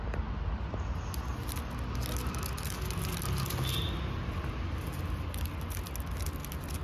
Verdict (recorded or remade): recorded